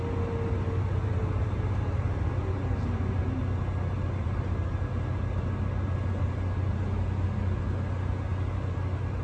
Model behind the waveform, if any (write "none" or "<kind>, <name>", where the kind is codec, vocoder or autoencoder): none